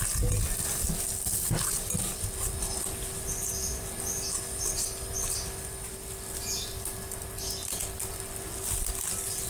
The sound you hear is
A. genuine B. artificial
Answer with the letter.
A